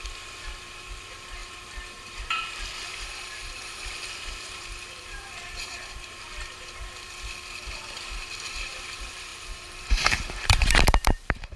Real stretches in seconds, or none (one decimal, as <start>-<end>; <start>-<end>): none